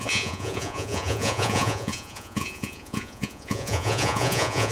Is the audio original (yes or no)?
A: no